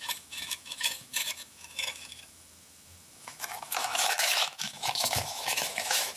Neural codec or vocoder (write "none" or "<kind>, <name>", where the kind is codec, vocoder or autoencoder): autoencoder, DAC-VAE